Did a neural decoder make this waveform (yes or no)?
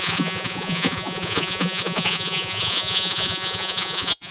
yes